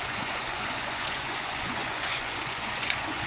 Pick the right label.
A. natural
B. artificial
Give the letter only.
B